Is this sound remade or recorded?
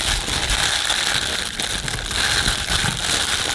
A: recorded